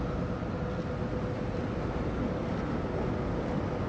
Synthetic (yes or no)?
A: no